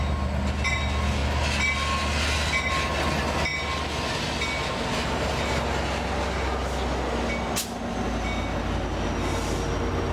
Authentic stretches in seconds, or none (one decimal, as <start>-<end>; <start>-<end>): 0.0-10.1